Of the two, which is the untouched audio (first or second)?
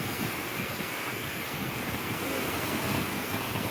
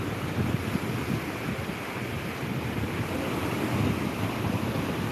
second